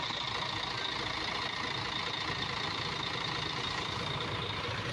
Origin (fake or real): real